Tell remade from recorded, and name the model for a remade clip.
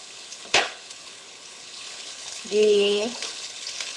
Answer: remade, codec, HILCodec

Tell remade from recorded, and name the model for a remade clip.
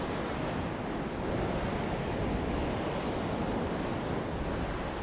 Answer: recorded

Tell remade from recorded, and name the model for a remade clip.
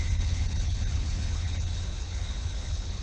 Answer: remade, codec, HILCodec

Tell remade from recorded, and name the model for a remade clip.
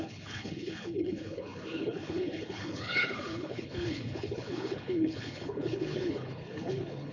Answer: remade, codec, HILCodec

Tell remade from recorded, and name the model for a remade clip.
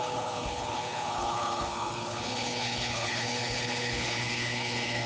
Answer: remade, codec, HILCodec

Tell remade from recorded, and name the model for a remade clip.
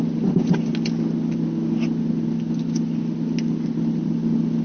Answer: recorded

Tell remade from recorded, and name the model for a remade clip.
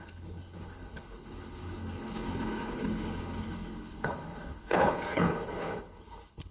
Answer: remade, codec, HILCodec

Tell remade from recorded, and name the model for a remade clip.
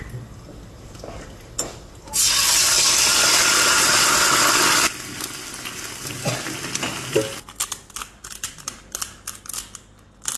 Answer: recorded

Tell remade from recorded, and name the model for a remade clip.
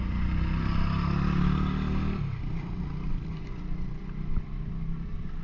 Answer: recorded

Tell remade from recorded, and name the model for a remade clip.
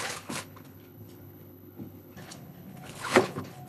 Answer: remade, codec, HILCodec